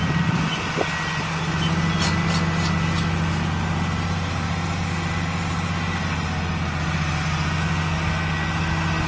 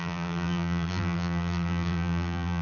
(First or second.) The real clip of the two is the first